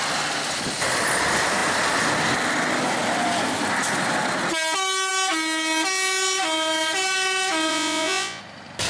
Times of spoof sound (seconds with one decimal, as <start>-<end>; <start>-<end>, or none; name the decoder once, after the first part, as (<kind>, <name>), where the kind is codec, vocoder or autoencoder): 7.7-8.4 (vocoder, Vocos)